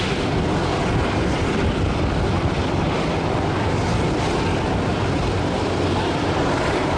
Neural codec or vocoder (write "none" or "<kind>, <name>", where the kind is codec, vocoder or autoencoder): vocoder, BigVGAN v2